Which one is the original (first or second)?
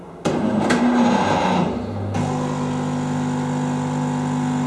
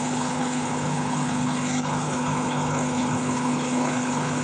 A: first